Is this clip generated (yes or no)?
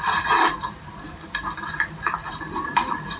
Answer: yes